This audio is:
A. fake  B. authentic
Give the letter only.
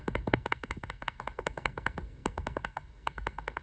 A